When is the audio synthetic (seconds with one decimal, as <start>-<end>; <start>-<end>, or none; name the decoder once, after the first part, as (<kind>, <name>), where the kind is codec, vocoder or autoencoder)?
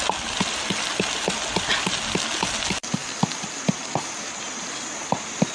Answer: none